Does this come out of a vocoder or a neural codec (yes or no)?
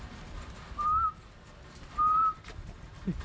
no